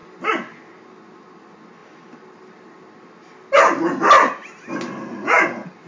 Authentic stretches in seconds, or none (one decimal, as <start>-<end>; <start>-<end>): 0.0-5.9